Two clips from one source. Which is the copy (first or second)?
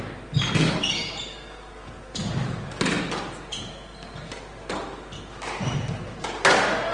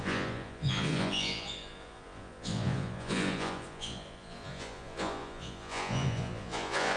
second